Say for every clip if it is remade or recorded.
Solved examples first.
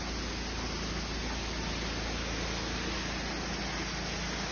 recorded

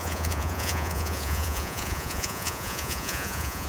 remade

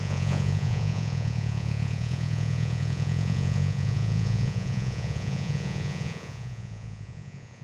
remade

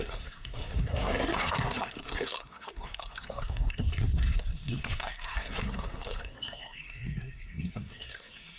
remade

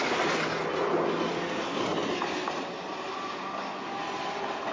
recorded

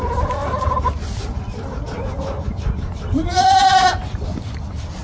recorded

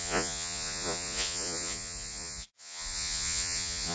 remade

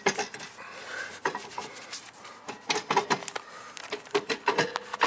recorded